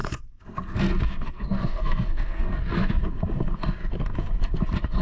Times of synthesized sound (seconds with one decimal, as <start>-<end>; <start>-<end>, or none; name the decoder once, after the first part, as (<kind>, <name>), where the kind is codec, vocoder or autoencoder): 0.0-3.0 (codec, SNAC)